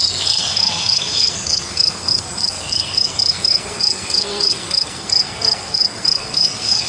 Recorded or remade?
remade